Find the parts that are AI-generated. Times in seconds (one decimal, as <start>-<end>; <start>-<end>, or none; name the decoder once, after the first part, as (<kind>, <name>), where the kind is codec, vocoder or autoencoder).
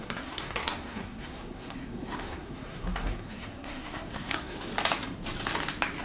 0.0-4.7 (codec, SNAC)